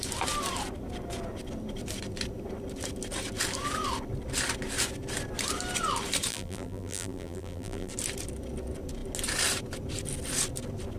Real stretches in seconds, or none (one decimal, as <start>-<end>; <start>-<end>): 0.0-6.3; 7.9-11.0